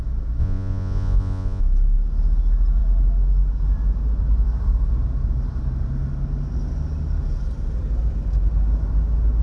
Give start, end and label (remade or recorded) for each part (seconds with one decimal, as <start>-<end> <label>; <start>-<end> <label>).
0.0-0.4 recorded; 0.4-1.6 remade; 1.6-9.4 recorded

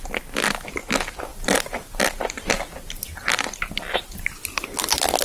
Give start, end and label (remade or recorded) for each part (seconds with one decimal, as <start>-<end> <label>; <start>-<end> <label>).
0.0-1.3 recorded; 1.3-2.0 remade; 2.0-5.2 recorded

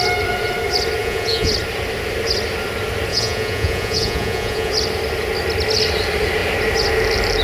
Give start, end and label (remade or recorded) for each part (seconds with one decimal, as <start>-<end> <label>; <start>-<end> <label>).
0.0-1.0 recorded; 1.0-1.5 remade; 1.5-3.1 recorded; 3.1-4.7 remade; 4.7-7.4 recorded

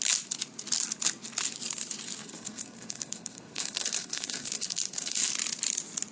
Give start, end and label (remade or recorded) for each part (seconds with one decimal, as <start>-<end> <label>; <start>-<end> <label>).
0.0-2.2 recorded; 2.2-5.3 remade; 5.3-6.1 recorded

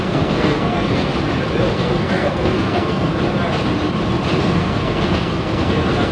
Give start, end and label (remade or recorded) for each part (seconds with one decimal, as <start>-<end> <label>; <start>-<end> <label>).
0.0-1.1 remade; 1.1-1.7 recorded; 1.7-3.1 remade; 3.1-4.4 recorded; 4.4-6.1 remade

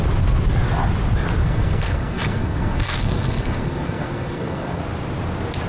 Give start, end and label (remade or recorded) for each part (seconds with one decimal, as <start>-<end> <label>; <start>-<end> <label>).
0.0-1.4 recorded; 1.4-4.8 remade; 4.8-5.7 recorded

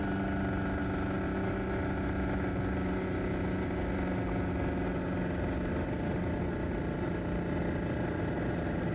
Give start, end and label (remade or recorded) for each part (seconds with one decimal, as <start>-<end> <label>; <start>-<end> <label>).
0.0-8.9 recorded